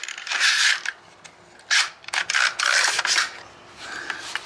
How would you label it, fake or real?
real